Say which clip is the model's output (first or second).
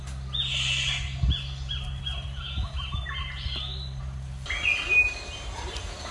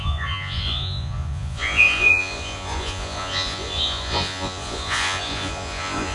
second